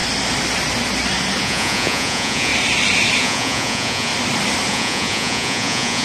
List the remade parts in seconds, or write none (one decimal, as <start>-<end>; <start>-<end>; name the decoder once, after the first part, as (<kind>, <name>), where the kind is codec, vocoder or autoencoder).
1.4-2.5 (vocoder, Vocos); 3.2-4.1; 4.7-6.0

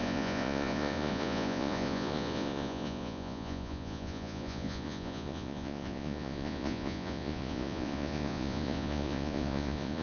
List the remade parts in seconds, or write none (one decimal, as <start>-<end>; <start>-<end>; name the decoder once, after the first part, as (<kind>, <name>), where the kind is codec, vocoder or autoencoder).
0.0-10.0 (vocoder, Vocos)